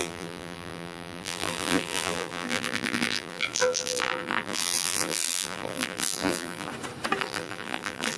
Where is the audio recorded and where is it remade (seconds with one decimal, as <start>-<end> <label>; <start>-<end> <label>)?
0.0-6.7 remade; 6.7-7.2 recorded; 7.2-8.2 remade

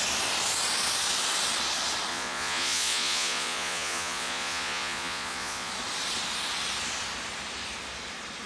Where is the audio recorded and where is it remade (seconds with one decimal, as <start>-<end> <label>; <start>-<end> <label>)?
0.0-2.1 recorded; 2.1-5.7 remade; 5.7-8.5 recorded

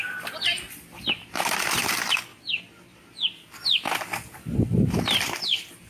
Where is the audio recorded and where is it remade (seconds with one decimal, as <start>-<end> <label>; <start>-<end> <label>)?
0.0-2.3 remade; 2.3-5.0 recorded; 5.0-5.9 remade

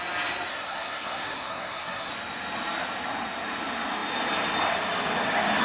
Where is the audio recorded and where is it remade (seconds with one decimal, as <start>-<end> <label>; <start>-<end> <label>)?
0.0-0.5 recorded; 0.5-2.1 remade; 2.1-5.6 recorded

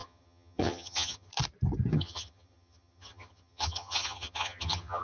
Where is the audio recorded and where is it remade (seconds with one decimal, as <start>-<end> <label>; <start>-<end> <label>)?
0.0-1.3 remade; 1.3-1.9 recorded; 1.9-5.0 remade